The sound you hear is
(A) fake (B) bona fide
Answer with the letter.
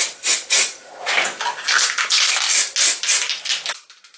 B